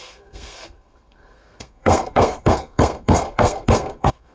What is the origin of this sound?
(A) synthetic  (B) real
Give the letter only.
A